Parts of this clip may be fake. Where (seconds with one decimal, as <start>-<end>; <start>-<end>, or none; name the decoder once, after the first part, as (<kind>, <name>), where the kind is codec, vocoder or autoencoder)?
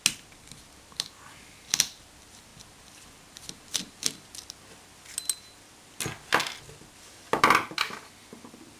none